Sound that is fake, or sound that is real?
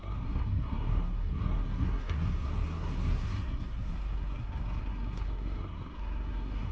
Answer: fake